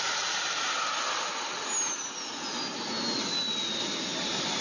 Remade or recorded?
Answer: recorded